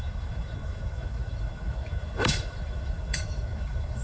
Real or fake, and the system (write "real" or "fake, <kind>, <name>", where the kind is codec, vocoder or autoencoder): fake, autoencoder, DAC-VAE